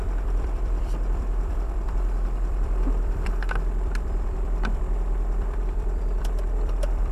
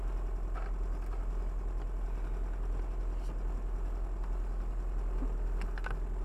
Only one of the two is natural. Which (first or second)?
second